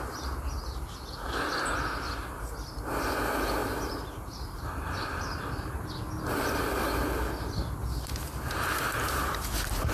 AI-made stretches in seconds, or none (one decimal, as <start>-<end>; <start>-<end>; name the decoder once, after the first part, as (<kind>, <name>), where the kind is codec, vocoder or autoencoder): 3.6-5.4 (vocoder, BigVGAN v2); 7.8-9.9